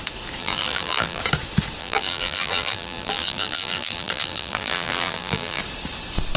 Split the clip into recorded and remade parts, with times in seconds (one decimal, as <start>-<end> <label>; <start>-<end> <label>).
0.0-0.4 recorded; 0.4-1.2 remade; 1.2-1.8 recorded; 1.8-5.6 remade; 5.6-6.4 recorded